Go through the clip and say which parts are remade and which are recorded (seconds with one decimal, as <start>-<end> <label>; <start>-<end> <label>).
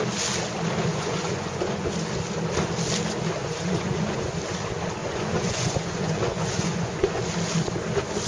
0.0-0.9 recorded; 0.9-1.9 remade; 1.9-3.4 recorded; 3.4-4.4 remade; 4.4-5.0 recorded; 5.0-7.2 remade; 7.2-8.3 recorded